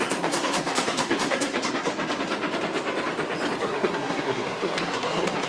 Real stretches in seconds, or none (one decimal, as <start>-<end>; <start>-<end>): 1.9-3.6